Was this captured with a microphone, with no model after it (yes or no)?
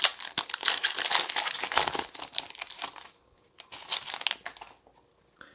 yes